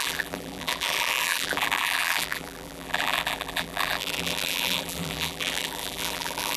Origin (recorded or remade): remade